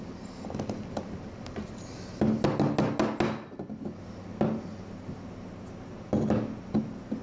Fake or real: real